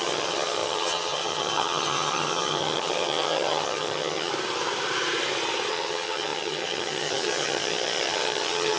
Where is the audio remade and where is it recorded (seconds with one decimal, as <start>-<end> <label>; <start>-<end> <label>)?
0.0-4.3 remade; 4.3-5.7 recorded; 5.7-8.8 remade

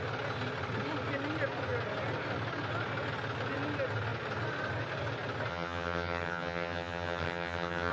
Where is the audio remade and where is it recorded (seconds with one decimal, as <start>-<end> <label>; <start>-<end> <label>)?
0.0-5.5 recorded; 5.5-7.9 remade

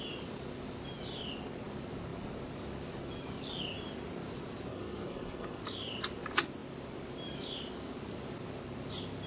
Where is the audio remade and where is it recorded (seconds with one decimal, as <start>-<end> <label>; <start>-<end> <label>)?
0.0-4.7 recorded; 4.7-5.6 remade; 5.6-9.3 recorded

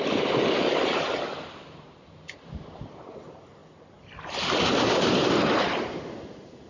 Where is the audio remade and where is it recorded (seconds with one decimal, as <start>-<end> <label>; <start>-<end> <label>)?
0.0-3.6 remade; 3.6-6.3 recorded; 6.3-6.7 remade

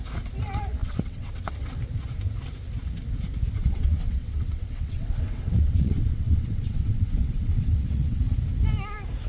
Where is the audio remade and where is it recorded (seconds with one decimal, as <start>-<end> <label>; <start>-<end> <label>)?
0.0-0.8 recorded; 0.8-1.5 remade; 1.5-3.6 recorded; 3.6-8.2 remade; 8.2-9.3 recorded